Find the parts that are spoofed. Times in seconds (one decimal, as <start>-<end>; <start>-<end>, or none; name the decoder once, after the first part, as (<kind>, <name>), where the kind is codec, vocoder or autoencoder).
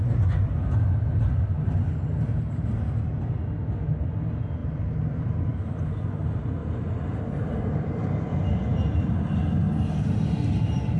4.6-5.8 (vocoder, BigVGAN v2); 6.6-8.1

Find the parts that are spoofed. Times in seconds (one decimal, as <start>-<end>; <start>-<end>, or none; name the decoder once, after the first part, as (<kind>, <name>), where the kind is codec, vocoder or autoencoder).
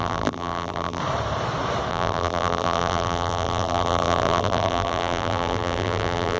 0.0-1.0 (vocoder, BigVGAN v2); 1.9-6.4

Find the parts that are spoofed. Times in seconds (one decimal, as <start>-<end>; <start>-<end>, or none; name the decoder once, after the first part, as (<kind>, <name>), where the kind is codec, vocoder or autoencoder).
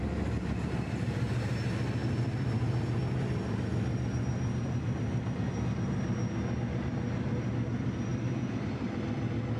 2.0-2.7 (vocoder, BigVGAN v2); 8.1-9.6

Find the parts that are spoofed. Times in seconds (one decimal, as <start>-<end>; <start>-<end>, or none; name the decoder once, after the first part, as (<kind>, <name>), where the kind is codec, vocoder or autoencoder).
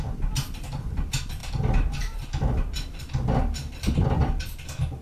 none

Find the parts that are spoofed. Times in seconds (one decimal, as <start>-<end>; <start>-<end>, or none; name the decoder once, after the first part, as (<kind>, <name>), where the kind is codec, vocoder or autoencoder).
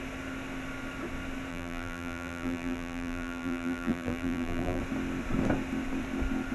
1.5-4.8 (vocoder, BigVGAN v2)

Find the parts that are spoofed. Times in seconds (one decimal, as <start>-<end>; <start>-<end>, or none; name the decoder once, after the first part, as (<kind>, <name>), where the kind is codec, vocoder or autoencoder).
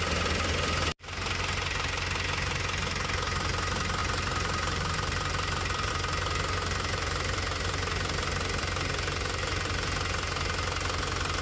4.0-5.9 (vocoder, BigVGAN v2)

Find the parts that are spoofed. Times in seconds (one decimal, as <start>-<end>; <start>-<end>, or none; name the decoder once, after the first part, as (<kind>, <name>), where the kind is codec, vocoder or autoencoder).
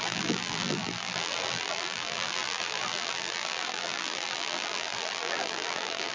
0.0-6.1 (vocoder, BigVGAN v2)